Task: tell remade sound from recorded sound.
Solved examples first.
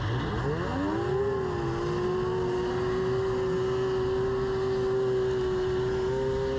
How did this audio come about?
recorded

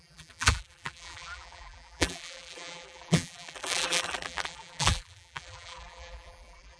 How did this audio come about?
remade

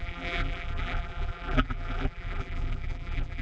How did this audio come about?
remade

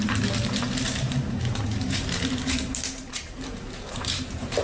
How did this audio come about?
remade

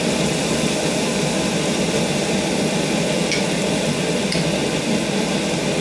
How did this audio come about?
recorded